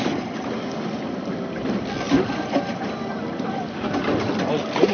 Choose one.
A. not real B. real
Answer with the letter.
B